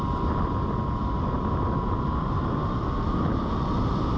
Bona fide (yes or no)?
yes